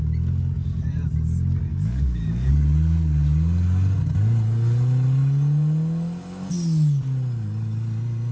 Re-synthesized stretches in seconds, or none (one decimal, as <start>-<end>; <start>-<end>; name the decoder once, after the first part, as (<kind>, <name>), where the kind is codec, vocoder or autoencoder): 1.7-2.5 (codec, DAC)